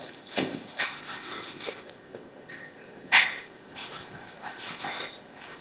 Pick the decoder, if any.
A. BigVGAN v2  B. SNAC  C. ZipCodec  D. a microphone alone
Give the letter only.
C